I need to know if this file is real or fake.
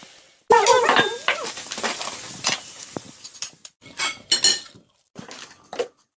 real